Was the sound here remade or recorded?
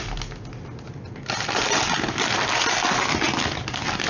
recorded